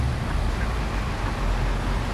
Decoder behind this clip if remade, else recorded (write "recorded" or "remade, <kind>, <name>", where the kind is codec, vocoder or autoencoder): recorded